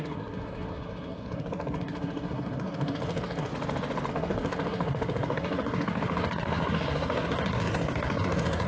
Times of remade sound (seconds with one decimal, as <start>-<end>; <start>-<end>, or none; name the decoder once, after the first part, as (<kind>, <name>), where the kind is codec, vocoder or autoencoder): 0.0-3.5 (codec, SNAC); 4.1-8.7